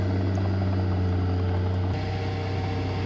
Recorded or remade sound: recorded